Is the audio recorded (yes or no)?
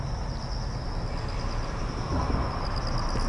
yes